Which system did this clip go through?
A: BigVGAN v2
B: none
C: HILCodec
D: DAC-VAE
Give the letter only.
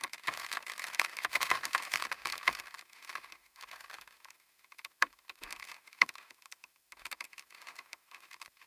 D